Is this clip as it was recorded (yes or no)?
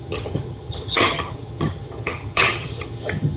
no